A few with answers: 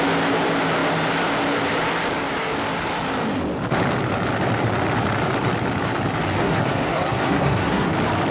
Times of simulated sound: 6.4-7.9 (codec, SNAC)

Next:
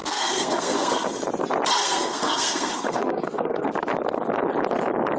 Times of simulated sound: 0.0-0.9 (codec, SNAC); 1.8-3.7

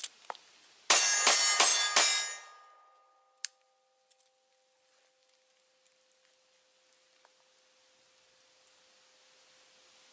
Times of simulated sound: none

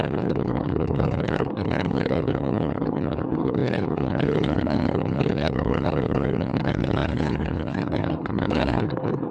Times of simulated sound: 0.0-9.3 (codec, SNAC)

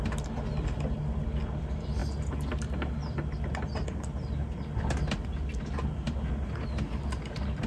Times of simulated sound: none

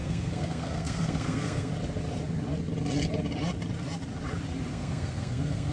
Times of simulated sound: 0.0-1.7 (codec, SNAC); 4.7-5.7